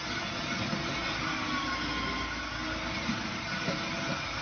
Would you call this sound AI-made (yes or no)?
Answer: no